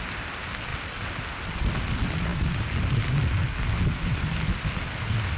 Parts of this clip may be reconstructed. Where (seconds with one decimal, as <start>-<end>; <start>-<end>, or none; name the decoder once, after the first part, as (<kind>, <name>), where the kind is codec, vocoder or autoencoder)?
none